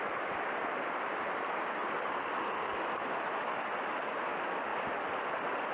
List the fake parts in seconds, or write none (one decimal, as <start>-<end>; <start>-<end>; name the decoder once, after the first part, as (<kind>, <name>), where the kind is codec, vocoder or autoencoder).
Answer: none